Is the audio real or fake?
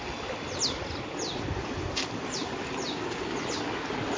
real